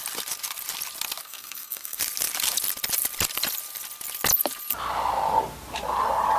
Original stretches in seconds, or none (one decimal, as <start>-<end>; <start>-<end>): 0.0-1.2; 2.0-6.4

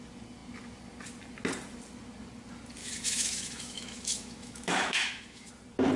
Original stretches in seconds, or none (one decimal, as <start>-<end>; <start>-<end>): 0.0-2.8; 5.5-6.0